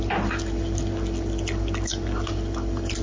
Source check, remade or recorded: recorded